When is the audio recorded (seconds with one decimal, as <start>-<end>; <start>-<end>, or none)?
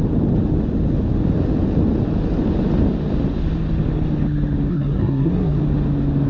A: 0.0-4.7; 5.6-6.3